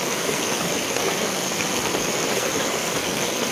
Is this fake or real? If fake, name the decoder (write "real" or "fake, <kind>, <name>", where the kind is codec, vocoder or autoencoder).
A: fake, codec, SNAC